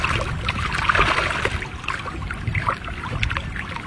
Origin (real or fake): real